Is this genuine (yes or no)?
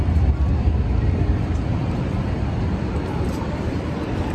no